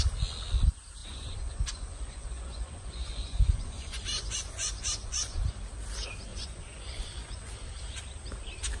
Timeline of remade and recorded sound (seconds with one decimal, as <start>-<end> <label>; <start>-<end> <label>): 0.0-1.0 recorded; 1.0-5.5 remade; 5.5-6.3 recorded; 6.3-7.5 remade; 7.5-8.8 recorded